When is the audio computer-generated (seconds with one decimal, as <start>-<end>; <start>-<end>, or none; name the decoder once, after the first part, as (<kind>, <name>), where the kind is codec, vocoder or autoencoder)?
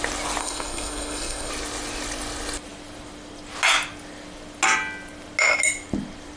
0.4-1.5 (codec, SNAC)